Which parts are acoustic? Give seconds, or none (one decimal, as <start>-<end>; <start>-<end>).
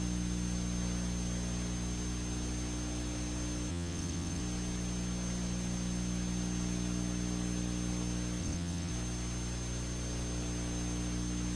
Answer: 0.0-3.7; 4.4-8.4; 8.9-11.6